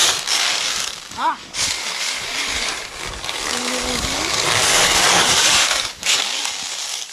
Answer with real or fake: fake